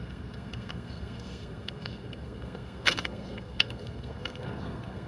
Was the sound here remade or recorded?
remade